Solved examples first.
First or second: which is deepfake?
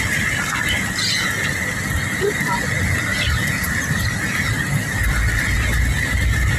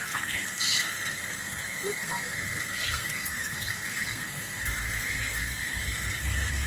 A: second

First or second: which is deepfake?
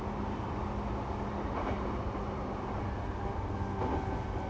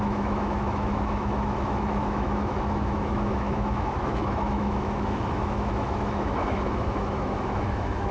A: second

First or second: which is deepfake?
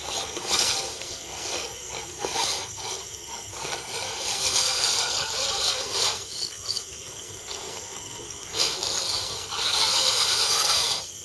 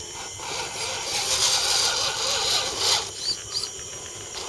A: first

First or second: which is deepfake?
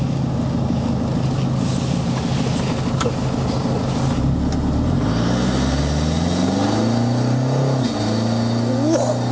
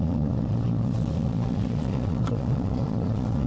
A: second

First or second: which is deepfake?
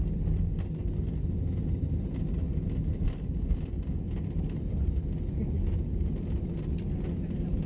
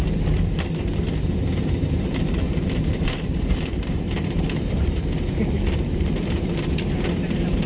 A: second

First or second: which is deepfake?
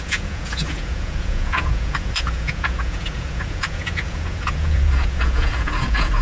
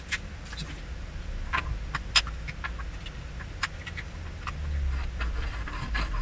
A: first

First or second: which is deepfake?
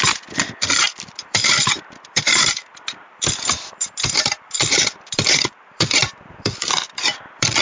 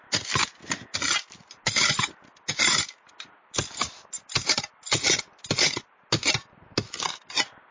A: first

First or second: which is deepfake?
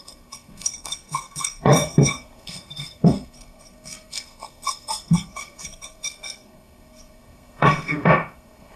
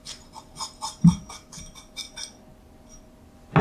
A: first